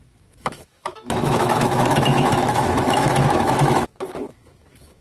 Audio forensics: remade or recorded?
remade